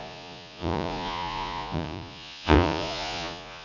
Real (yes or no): no